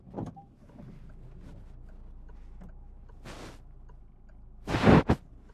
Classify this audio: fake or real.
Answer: real